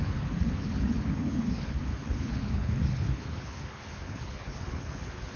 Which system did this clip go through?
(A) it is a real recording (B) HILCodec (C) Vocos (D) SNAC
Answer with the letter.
B